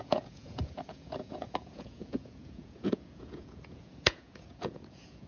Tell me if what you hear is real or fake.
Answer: fake